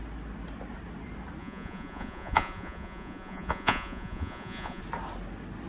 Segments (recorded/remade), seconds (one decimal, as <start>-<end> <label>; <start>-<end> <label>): 0.0-1.4 recorded; 1.4-4.8 remade; 4.8-5.7 recorded